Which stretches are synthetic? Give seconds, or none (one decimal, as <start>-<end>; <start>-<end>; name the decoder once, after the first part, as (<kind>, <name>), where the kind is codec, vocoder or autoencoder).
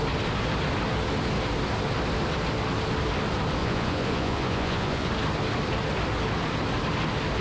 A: 3.6-5.1 (vocoder, Vocos)